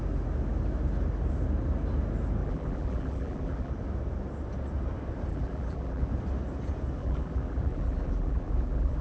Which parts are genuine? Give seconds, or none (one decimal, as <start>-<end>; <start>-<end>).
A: 0.0-2.4; 3.7-5.3; 6.1-7.0